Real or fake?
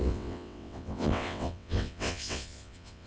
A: fake